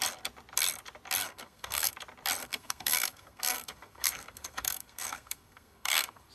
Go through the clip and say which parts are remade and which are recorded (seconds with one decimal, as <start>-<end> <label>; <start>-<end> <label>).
0.0-1.2 recorded; 1.2-1.9 remade; 1.9-2.4 recorded; 2.4-6.3 remade